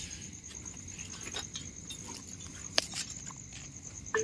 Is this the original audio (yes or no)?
yes